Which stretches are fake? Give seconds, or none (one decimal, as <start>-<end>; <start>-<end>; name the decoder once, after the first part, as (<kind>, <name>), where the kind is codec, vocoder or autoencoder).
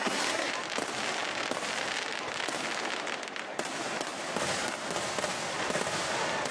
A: 0.0-0.5 (codec, SNAC)